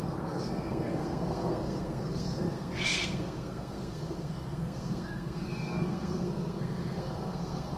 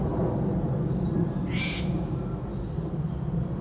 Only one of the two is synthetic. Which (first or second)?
first